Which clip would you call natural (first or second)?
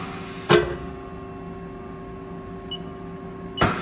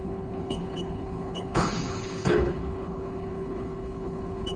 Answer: first